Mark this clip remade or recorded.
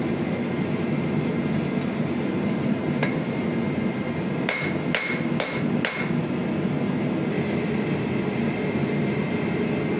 recorded